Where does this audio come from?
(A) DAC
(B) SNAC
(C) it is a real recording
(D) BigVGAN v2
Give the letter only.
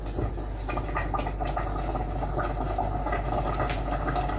C